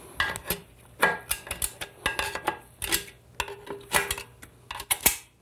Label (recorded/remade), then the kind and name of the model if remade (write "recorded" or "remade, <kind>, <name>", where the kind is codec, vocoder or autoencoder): recorded